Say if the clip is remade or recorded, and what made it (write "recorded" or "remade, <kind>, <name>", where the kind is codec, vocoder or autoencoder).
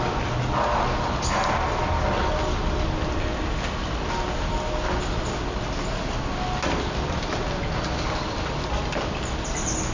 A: recorded